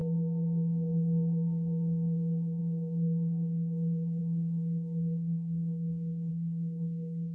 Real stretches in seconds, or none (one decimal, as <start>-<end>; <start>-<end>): none